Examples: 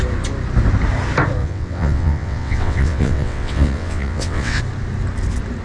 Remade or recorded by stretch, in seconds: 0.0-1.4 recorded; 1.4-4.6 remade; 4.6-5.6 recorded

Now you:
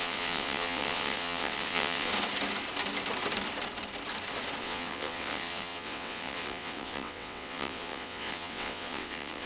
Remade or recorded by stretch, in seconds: 0.0-2.1 remade; 2.1-4.6 recorded; 4.6-9.5 remade

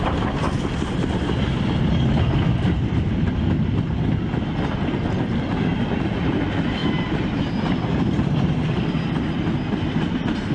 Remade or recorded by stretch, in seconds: 0.0-10.5 recorded

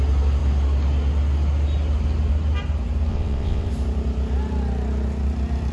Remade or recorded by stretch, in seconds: 0.0-3.1 recorded; 3.1-3.7 remade; 3.7-5.7 recorded

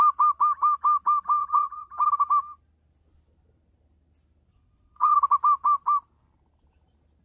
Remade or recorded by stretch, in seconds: 0.0-1.4 recorded; 1.4-1.9 remade; 1.9-4.5 recorded; 4.5-5.1 remade; 5.1-7.2 recorded

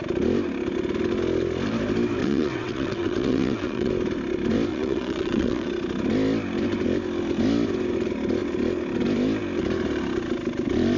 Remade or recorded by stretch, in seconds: 0.0-2.2 recorded; 2.2-3.9 remade; 3.9-4.7 recorded; 4.7-5.7 remade; 5.7-11.0 recorded

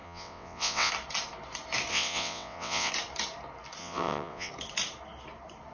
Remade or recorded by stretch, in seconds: 0.0-0.9 remade; 0.9-1.9 recorded; 1.9-2.9 remade; 2.9-3.8 recorded; 3.8-4.5 remade; 4.5-5.7 recorded

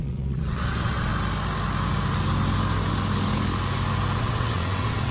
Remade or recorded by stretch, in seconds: 0.0-1.1 remade; 1.1-4.2 recorded; 4.2-5.1 remade